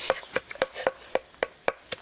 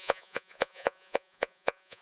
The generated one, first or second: second